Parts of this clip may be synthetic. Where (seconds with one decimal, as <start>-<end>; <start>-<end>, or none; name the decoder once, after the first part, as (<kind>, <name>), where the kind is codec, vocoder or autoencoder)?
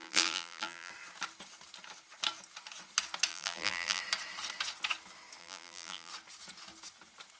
0.0-0.9 (vocoder, BigVGAN v2); 3.3-4.0; 5.4-6.1